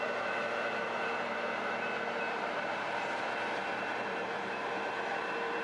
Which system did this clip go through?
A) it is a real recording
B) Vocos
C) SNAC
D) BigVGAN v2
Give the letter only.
D